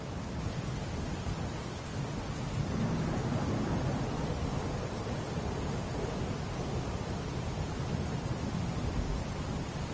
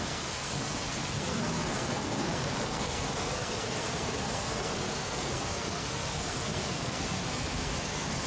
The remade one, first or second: second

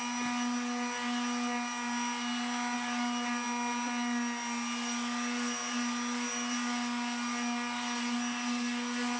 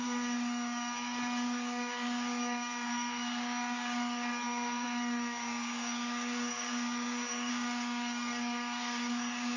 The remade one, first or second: second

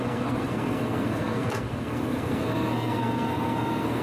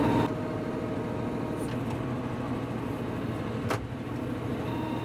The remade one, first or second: first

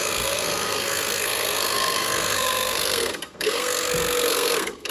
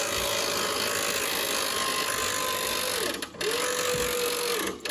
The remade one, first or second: first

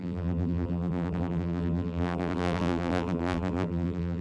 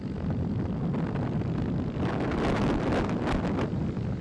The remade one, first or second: first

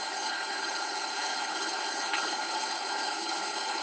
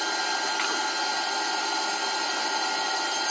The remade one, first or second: first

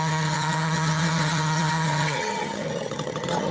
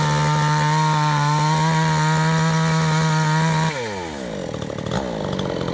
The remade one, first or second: first